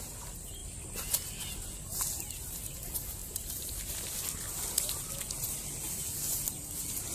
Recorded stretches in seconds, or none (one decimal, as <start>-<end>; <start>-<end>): 0.0-7.1